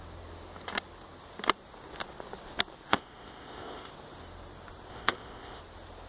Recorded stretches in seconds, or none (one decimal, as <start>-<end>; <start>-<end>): 0.0-2.9; 3.9-4.9; 5.6-6.1